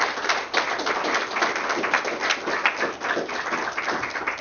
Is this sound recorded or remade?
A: recorded